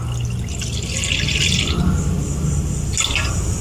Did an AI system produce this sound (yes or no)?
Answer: no